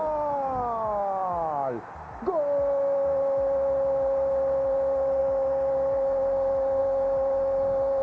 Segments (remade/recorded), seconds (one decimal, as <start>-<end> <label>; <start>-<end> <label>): 0.0-8.0 recorded